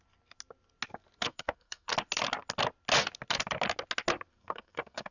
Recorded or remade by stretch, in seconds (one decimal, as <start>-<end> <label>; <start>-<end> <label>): 0.0-1.3 recorded; 1.3-1.9 remade; 1.9-4.3 recorded; 4.3-5.1 remade